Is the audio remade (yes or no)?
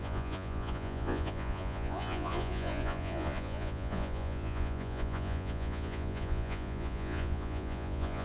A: yes